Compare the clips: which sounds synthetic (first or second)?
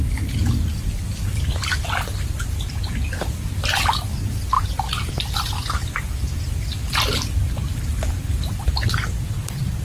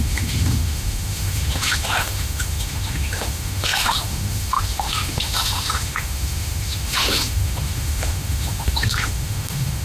second